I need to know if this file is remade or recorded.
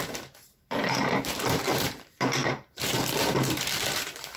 remade